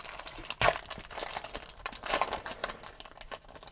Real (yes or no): yes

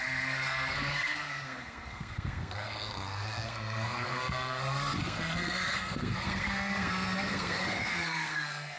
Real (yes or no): no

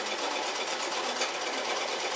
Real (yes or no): yes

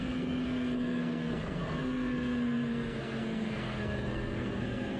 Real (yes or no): no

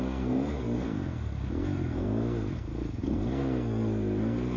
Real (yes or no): no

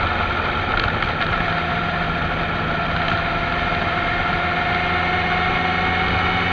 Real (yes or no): yes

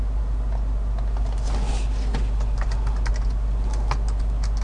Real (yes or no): yes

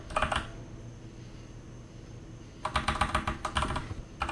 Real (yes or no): yes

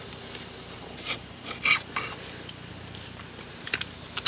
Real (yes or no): yes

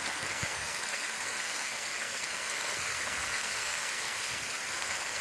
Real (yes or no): no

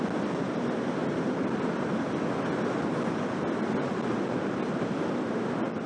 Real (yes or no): yes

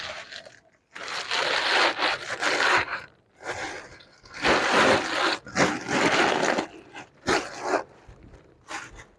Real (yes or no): yes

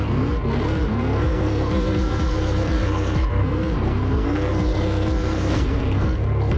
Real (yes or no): no